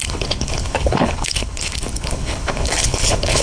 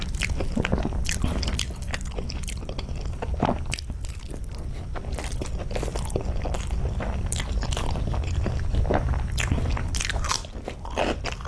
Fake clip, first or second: first